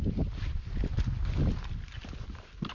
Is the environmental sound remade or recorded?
recorded